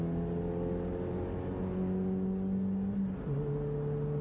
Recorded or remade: recorded